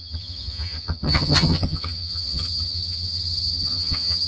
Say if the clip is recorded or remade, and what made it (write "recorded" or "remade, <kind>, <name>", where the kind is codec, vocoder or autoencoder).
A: remade, vocoder, HiFi-GAN